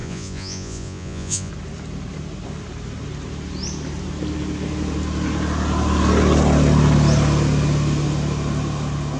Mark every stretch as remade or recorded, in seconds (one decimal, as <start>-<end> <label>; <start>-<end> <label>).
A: 0.0-1.5 remade; 1.5-9.2 recorded